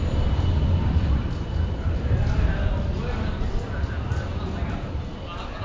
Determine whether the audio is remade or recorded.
recorded